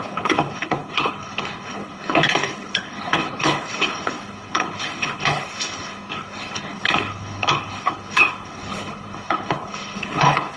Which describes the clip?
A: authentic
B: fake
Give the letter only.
B